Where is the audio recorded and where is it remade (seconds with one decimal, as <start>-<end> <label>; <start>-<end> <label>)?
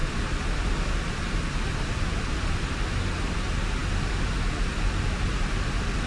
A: 0.0-6.1 recorded